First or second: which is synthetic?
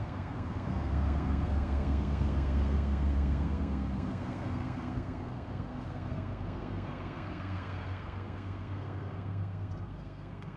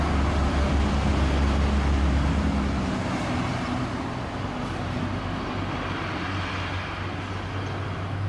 first